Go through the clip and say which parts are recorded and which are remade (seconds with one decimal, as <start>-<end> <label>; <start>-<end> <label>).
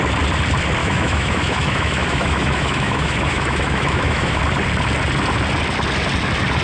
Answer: 0.0-0.8 recorded; 0.8-4.4 remade; 4.4-6.6 recorded